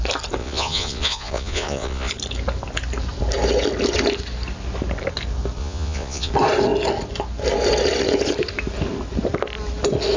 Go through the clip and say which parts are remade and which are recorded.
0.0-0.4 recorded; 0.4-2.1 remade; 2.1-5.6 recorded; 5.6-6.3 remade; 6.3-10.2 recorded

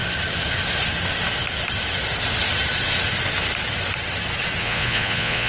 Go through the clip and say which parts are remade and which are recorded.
0.0-4.6 recorded; 4.6-5.5 remade

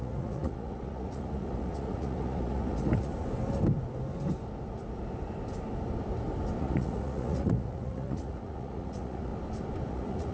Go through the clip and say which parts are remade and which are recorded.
0.0-3.1 remade; 3.1-6.6 recorded; 6.6-9.3 remade; 9.3-9.9 recorded; 9.9-10.3 remade

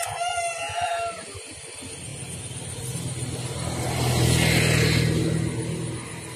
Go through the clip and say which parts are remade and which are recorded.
0.0-6.4 recorded